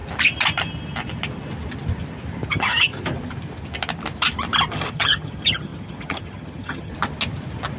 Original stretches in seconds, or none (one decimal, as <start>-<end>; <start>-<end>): 0.0-2.5; 2.9-4.7; 6.9-7.8